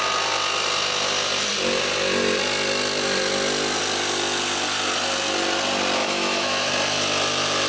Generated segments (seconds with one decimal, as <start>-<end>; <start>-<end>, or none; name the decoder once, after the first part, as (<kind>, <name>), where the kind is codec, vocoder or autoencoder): 6.0-6.7 (autoencoder, DAC-VAE)

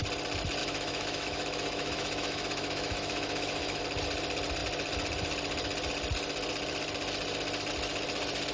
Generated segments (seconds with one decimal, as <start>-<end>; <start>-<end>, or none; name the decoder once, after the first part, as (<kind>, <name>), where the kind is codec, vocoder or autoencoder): 0.6-3.8 (autoencoder, DAC-VAE)

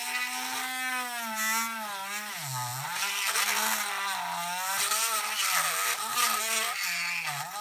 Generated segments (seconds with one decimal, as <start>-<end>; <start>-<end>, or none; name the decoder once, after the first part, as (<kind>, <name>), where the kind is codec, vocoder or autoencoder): none

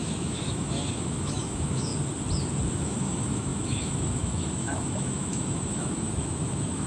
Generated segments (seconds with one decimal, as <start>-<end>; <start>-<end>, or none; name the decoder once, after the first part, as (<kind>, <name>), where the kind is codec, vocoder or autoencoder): 0.0-1.9 (autoencoder, DAC-VAE); 2.7-6.9

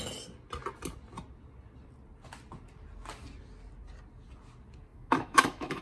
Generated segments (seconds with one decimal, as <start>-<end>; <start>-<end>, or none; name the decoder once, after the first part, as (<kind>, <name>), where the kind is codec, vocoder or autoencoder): 4.9-5.8 (autoencoder, DAC-VAE)

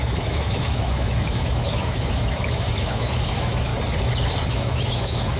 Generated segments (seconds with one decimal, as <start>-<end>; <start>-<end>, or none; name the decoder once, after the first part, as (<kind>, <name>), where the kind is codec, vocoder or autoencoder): 0.0-3.7 (autoencoder, DAC-VAE); 4.5-5.4